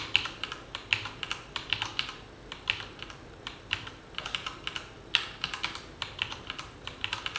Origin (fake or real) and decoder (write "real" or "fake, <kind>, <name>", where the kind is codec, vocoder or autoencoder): fake, vocoder, BigVGAN v2